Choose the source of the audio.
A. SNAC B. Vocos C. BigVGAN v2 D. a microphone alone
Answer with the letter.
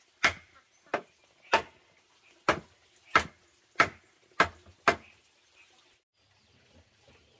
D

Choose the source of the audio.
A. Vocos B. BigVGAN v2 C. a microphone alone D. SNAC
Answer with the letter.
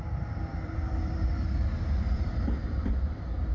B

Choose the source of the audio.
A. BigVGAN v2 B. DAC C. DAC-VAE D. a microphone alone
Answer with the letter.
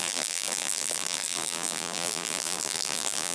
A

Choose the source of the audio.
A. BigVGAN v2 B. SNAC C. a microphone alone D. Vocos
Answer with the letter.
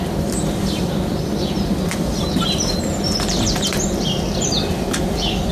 A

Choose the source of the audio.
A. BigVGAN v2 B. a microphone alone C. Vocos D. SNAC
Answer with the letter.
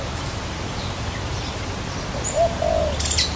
B